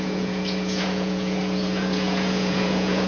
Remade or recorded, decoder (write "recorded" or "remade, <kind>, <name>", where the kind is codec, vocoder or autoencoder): remade, vocoder, Vocos